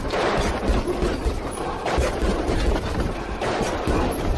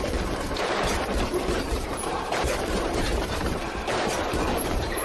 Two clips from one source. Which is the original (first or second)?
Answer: first